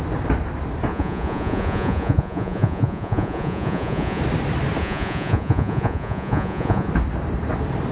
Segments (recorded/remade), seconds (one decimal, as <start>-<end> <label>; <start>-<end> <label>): 0.0-0.9 recorded; 0.9-4.2 remade; 4.2-4.8 recorded; 4.8-6.9 remade; 6.9-7.9 recorded